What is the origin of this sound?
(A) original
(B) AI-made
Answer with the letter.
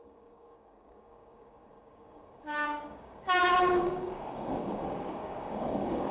B